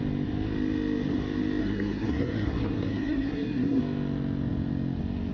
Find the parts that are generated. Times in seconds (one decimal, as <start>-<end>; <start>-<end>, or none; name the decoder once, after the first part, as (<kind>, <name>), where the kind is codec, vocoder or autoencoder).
1.6-3.8 (codec, SNAC)